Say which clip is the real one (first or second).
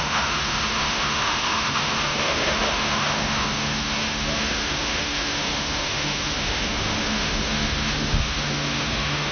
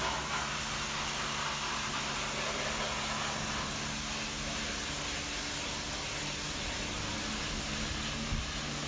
second